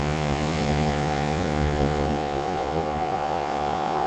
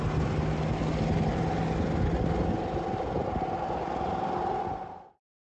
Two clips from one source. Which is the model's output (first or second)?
first